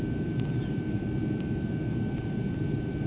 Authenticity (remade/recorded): recorded